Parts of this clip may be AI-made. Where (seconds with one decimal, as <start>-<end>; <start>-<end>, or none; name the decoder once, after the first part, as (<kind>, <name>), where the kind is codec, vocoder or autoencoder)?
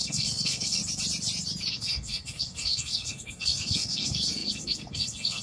0.0-0.8 (codec, SNAC); 1.7-5.4